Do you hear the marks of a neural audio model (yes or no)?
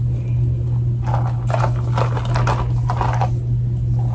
no